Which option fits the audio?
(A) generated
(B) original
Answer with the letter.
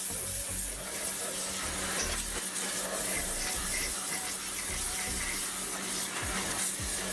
B